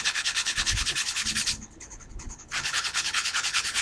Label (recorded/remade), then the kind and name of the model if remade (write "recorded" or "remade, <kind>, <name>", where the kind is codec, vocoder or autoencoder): remade, codec, HILCodec